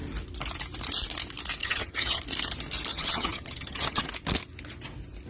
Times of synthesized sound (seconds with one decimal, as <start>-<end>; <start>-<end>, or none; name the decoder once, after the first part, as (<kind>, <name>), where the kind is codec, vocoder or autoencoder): 1.6-2.2 (vocoder, HiFi-GAN); 2.9-4.1

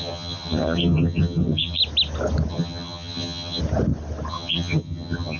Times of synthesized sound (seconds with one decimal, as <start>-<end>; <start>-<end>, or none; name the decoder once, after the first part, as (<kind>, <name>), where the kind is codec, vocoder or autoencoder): 0.0-1.8 (vocoder, HiFi-GAN); 2.5-3.6; 4.3-5.4